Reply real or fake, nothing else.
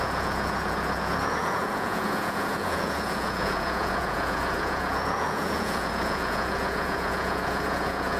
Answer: fake